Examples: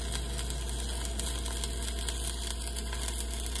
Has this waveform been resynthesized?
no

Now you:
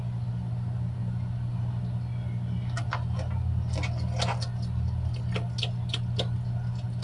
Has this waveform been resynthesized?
no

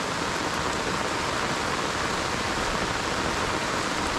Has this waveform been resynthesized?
no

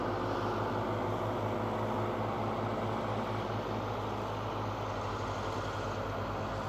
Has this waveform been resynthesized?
no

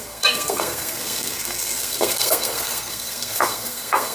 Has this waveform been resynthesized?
yes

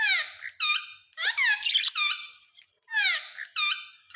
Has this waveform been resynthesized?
no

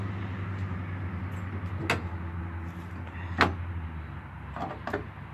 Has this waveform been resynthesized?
no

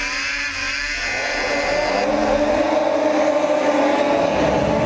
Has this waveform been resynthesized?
no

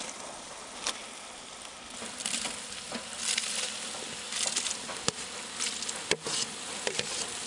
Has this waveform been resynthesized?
no